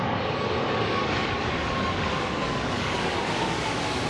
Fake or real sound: fake